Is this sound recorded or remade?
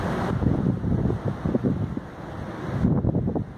recorded